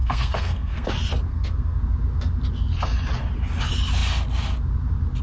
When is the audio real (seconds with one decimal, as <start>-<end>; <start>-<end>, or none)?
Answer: 0.9-1.3; 1.8-5.2